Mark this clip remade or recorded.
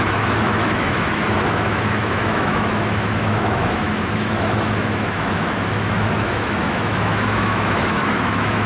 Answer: remade